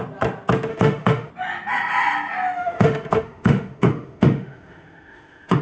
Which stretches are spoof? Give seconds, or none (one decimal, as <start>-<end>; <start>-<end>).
0.7-1.3; 2.6-5.6